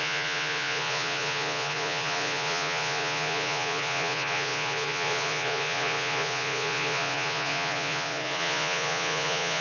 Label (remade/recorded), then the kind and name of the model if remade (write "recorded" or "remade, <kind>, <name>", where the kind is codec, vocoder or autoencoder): remade, vocoder, Vocos